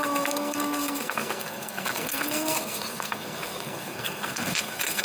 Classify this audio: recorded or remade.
remade